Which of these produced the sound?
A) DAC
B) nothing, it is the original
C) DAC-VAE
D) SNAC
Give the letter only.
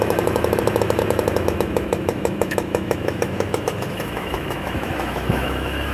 C